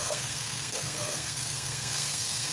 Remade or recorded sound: remade